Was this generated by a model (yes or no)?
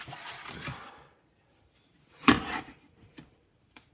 yes